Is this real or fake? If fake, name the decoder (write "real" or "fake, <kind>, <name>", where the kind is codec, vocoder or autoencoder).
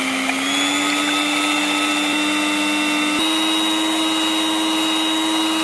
real